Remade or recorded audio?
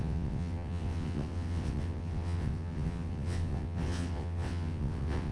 remade